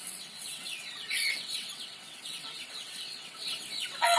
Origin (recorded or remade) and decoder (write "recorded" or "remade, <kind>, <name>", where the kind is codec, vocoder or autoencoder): remade, vocoder, WaveNeXt